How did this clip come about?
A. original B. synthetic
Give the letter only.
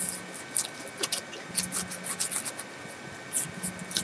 A